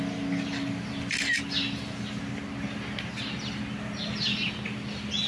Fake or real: real